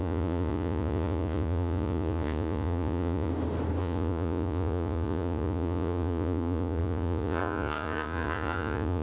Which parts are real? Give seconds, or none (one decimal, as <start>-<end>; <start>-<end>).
3.3-3.8